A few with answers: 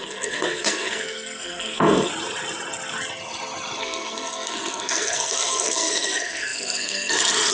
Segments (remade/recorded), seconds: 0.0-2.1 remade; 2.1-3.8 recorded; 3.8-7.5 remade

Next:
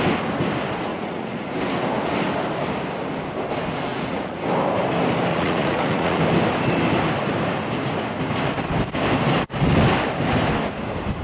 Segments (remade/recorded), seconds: 0.0-0.9 recorded; 0.9-1.5 remade; 1.5-3.9 recorded; 3.9-4.4 remade; 4.4-5.3 recorded; 5.3-6.2 remade; 6.2-11.2 recorded

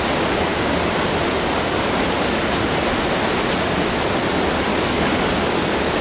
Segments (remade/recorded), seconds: 0.0-4.7 recorded; 4.7-6.0 remade

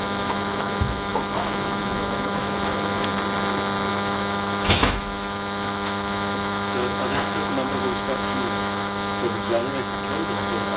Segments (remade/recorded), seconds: 0.0-3.1 remade; 3.1-3.9 recorded; 3.9-9.6 remade; 9.6-10.1 recorded; 10.1-10.8 remade

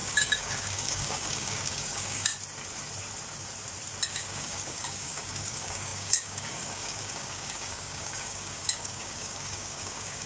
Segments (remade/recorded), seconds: 0.0-2.3 remade; 2.3-4.1 recorded; 4.1-10.3 remade

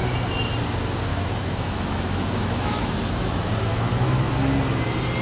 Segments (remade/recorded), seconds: 0.0-1.1 recorded; 1.1-2.9 remade; 2.9-3.7 recorded; 3.7-4.3 remade; 4.3-5.2 recorded

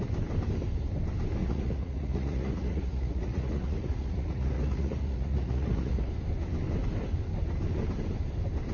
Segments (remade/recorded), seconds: 0.0-1.4 recorded; 1.4-6.1 remade; 6.1-8.7 recorded